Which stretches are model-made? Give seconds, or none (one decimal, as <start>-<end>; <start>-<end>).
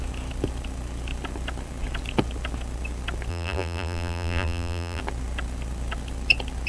3.3-5.0